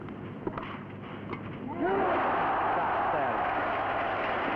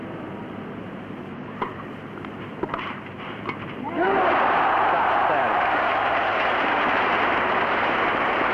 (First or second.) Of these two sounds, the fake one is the second